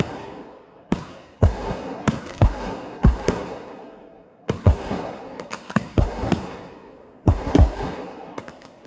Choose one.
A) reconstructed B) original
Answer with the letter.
A